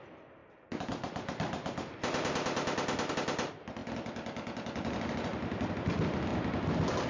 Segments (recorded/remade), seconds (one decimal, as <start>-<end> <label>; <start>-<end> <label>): 0.0-6.3 remade; 6.3-7.1 recorded